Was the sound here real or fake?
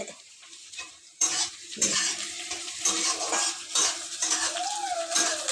fake